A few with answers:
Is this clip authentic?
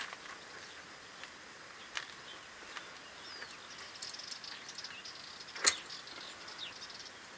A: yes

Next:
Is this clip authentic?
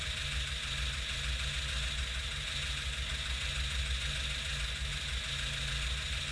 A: yes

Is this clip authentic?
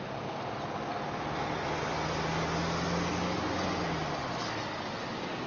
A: yes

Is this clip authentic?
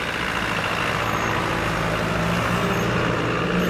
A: yes